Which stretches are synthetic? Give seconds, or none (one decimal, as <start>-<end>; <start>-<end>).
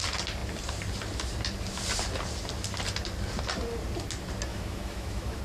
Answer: 4.5-5.4